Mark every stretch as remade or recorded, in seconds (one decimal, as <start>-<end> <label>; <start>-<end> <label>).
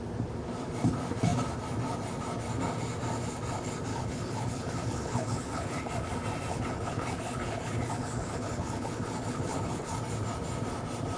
0.0-3.9 recorded; 3.9-5.9 remade; 5.9-6.5 recorded; 6.5-10.0 remade; 10.0-11.2 recorded